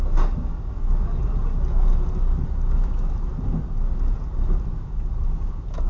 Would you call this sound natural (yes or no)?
yes